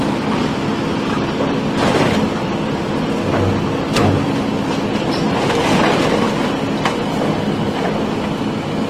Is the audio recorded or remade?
recorded